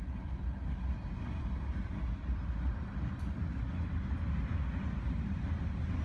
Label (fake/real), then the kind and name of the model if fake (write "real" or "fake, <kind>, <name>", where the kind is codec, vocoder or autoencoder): real